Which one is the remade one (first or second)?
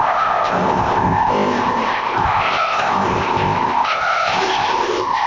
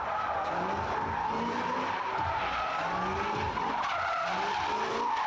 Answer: first